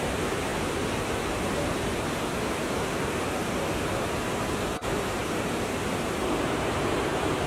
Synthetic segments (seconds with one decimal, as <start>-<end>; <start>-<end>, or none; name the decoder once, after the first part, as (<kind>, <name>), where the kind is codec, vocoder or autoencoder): 0.0-0.5 (vocoder, BigVGAN v2); 2.5-7.5